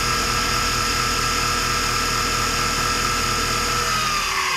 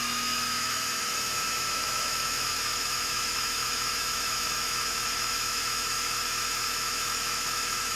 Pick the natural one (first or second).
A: first